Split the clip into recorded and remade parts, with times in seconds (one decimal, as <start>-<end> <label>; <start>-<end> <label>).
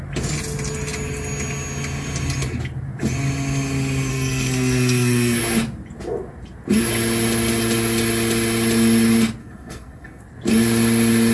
0.0-4.1 recorded; 4.1-5.4 remade; 5.4-9.4 recorded; 9.4-10.2 remade; 10.2-11.3 recorded